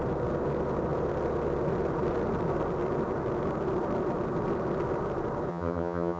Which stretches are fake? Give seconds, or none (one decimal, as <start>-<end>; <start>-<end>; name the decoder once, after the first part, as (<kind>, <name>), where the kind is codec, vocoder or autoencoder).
5.5-6.2 (vocoder, HiFi-GAN)